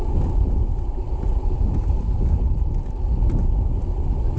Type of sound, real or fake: real